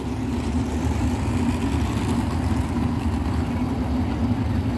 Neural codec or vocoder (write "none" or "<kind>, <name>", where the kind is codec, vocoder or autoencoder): none